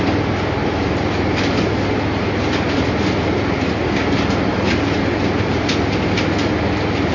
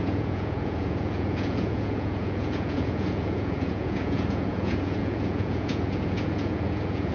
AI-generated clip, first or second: second